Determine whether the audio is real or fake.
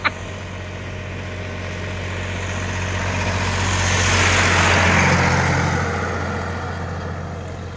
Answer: real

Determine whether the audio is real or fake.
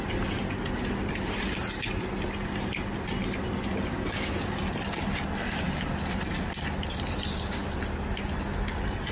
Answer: real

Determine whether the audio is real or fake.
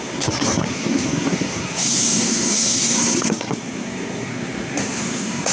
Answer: fake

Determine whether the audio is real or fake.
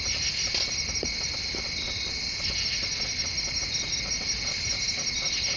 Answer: real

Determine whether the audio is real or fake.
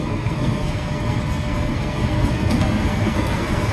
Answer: fake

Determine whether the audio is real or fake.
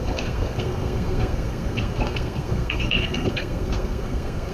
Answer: fake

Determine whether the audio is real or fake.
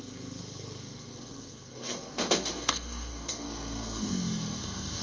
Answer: fake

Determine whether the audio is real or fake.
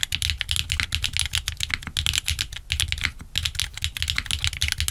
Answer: real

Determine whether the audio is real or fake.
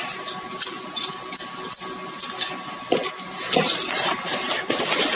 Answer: real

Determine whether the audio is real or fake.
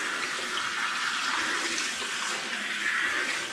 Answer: real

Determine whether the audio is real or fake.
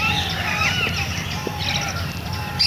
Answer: real